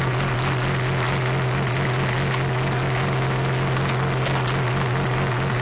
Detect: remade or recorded recorded